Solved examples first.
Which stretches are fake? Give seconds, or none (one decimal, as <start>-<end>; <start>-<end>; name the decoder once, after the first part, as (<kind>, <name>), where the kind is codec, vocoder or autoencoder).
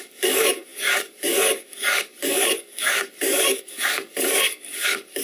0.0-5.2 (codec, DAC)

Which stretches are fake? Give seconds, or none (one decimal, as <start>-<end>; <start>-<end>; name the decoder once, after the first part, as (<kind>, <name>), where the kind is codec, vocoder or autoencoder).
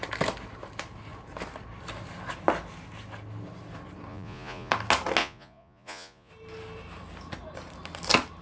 4.1-4.7 (vocoder, Vocos); 5.2-6.3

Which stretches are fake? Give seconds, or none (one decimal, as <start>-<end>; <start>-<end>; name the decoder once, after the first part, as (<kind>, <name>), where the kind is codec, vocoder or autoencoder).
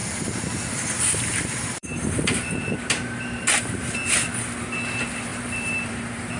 0.0-3.8 (vocoder, BigVGAN v2); 5.3-6.4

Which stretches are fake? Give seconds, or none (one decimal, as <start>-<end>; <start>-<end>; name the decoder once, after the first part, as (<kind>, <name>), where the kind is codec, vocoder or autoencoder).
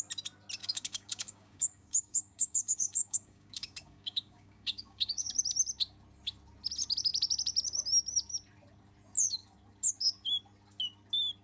0.6-5.3 (codec, DAC)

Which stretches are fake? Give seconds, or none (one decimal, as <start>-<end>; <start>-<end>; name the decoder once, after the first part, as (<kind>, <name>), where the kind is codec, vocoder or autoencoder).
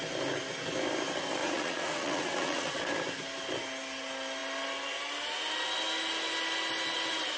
1.4-2.8 (vocoder, Vocos)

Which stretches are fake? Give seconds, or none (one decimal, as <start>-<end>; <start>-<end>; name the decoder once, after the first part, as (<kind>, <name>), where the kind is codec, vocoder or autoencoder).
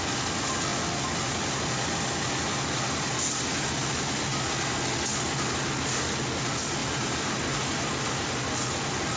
6.8-7.9 (vocoder, BigVGAN v2)